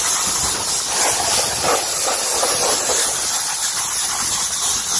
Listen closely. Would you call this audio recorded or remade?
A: recorded